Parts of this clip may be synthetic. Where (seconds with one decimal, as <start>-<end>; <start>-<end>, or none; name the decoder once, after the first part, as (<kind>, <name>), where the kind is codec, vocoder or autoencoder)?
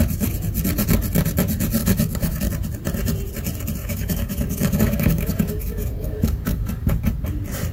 1.8-2.4 (codec, DAC); 3.8-7.0